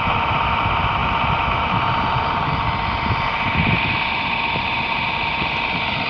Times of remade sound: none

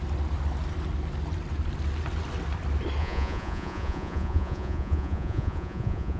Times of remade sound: 3.0-6.2 (vocoder, Vocos)

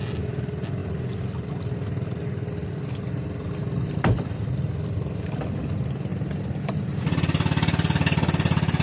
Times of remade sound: none

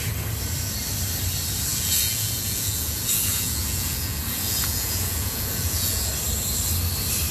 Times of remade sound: 1.7-6.1 (vocoder, Vocos)

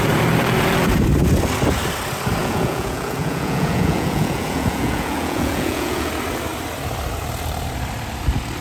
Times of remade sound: 2.4-6.1 (vocoder, Vocos)

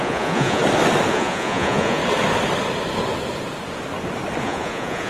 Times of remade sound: 0.0-0.6 (vocoder, Vocos); 1.1-2.0; 4.4-5.1

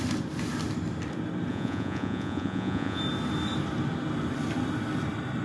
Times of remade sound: 1.5-3.0 (vocoder, Vocos)